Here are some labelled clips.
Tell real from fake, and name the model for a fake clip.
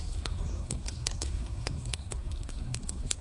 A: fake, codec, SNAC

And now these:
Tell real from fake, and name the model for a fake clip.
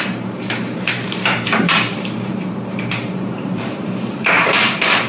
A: fake, vocoder, BigVGAN v2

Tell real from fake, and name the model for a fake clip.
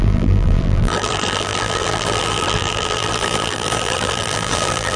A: fake, vocoder, BigVGAN v2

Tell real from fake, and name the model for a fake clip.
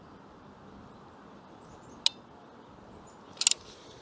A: real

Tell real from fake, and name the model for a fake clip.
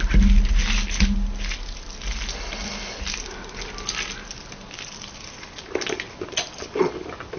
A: real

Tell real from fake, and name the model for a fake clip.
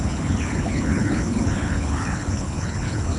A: fake, codec, HILCodec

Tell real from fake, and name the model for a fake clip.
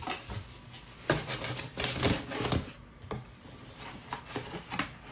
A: real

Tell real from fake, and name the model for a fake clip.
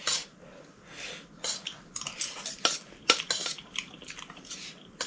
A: real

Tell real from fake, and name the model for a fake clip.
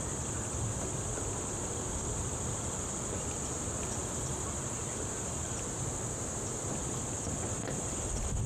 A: real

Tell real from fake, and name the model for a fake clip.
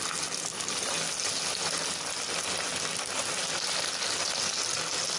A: real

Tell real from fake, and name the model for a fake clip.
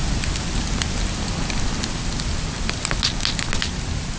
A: real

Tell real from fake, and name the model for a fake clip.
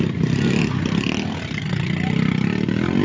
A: real